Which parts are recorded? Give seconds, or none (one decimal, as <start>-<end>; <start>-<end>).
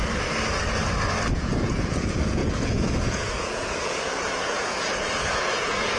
0.0-1.3